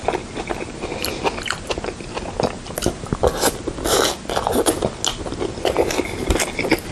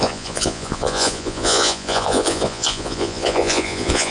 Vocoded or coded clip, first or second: second